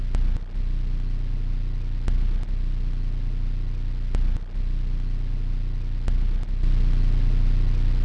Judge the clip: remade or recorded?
recorded